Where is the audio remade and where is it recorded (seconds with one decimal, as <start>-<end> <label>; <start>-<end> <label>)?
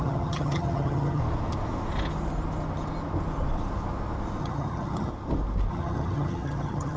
0.0-1.2 remade; 1.2-4.4 recorded; 4.4-5.1 remade; 5.1-5.7 recorded; 5.7-7.0 remade